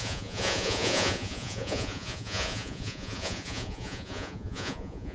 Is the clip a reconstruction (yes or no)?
yes